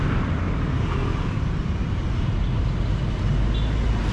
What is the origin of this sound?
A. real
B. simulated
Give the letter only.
A